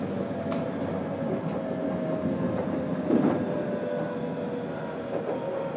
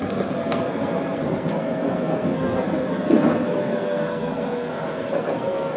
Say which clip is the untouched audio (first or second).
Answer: first